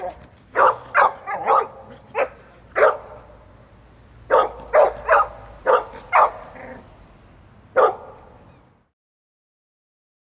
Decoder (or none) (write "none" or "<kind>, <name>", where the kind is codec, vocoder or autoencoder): none